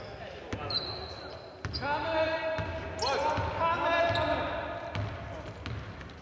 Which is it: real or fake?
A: real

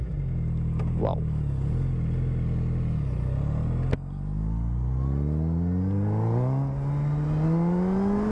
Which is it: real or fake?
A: real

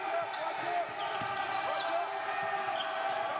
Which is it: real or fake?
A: real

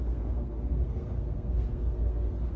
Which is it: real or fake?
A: fake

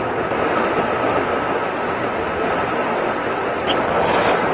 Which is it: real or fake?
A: real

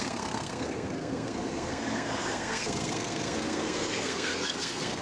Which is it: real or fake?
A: fake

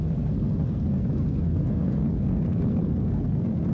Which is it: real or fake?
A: fake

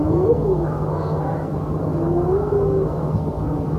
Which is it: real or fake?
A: fake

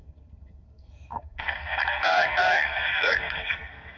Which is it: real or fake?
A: fake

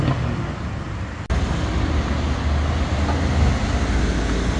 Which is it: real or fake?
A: real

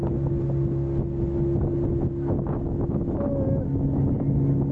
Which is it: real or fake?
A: real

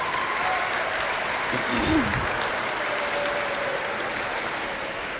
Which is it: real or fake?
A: real